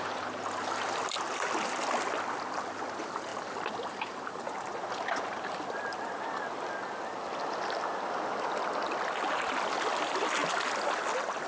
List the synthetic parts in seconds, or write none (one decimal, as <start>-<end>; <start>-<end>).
none